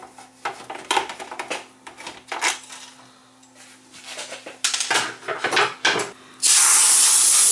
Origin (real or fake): real